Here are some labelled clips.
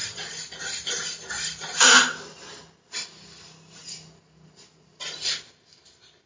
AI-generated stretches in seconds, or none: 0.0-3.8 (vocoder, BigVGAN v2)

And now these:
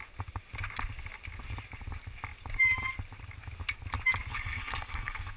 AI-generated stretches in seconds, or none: 4.3-5.4 (codec, SNAC)

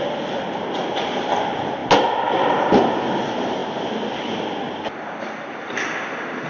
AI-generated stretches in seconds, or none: none